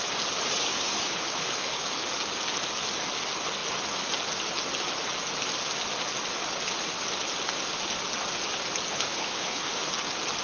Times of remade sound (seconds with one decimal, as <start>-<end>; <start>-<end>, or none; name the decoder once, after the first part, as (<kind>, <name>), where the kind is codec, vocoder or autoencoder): 0.6-1.9 (codec, HILCodec); 8.9-9.8